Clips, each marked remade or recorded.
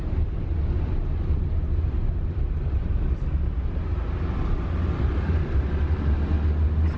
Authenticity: recorded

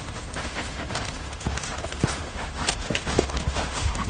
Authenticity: remade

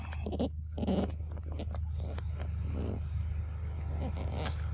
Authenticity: recorded